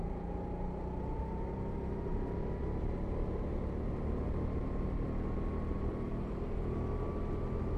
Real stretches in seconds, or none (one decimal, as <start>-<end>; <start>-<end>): 0.0-7.8

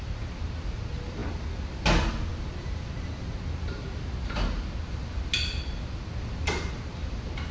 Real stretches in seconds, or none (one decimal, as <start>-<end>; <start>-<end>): 0.0-7.5

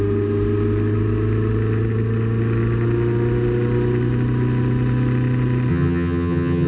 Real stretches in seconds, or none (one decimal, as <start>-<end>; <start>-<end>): 0.0-5.7

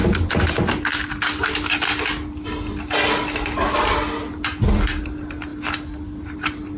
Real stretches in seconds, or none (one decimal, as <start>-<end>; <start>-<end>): 0.0-6.8